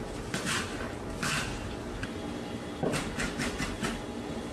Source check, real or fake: real